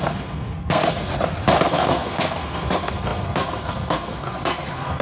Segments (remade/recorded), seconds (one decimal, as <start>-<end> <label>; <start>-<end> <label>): 0.0-1.1 remade; 1.1-1.7 recorded; 1.7-5.0 remade